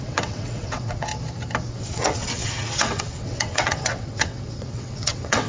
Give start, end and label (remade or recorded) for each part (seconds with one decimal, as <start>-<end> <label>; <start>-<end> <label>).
0.0-1.1 remade; 1.1-1.7 recorded; 1.7-5.5 remade